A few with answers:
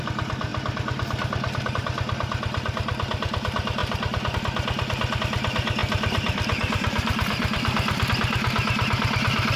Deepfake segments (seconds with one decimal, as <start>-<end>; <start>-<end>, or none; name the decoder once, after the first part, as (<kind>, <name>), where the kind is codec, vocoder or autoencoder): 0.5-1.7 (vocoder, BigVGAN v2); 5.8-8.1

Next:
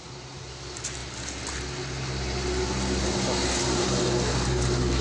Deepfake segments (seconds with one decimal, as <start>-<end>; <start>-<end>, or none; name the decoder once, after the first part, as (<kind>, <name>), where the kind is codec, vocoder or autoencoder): none

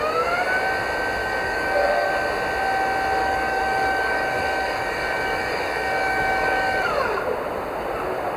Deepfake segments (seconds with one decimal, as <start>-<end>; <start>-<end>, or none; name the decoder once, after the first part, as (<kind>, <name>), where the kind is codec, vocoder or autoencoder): 1.2-2.1 (codec, DAC); 3.2-7.2